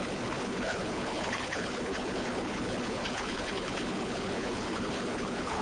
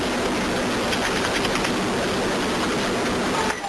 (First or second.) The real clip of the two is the second